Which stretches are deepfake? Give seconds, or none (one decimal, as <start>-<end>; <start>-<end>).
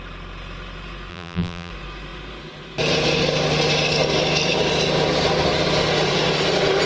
1.1-1.7